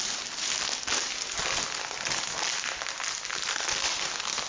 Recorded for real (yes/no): yes